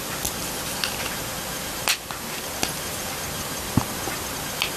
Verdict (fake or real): real